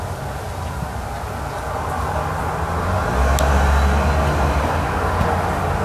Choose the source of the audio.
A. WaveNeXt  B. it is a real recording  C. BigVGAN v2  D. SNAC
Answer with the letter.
B